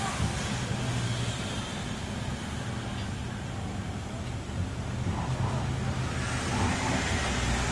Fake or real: real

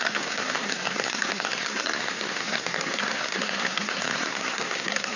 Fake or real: fake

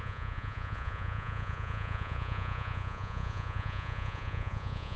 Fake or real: fake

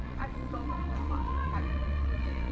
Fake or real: fake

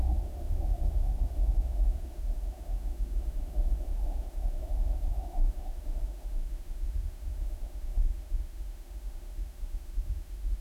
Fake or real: fake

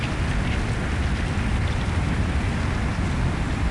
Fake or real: real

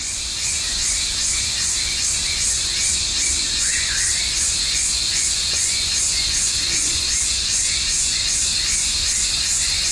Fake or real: fake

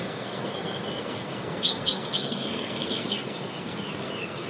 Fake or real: fake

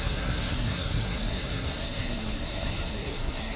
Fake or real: fake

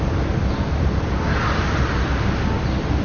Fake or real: real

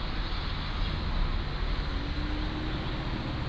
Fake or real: real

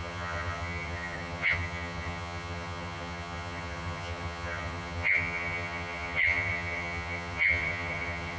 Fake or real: fake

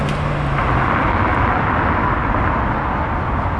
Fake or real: real